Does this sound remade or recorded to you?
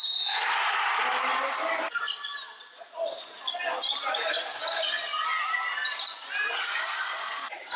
recorded